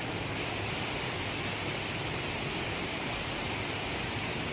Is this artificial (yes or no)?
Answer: no